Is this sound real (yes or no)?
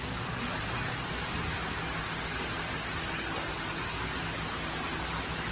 yes